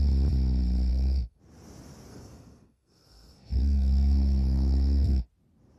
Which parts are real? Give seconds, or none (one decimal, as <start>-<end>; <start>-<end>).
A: 0.0-0.9; 1.4-2.1; 5.2-5.8